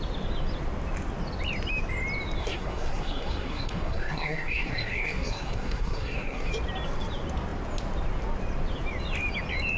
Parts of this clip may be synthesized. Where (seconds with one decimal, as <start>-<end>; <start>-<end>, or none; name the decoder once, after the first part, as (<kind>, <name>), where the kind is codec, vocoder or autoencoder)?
2.4-6.5 (codec, SNAC)